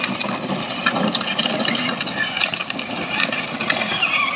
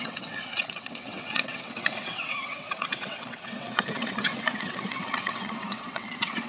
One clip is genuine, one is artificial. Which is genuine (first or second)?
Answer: first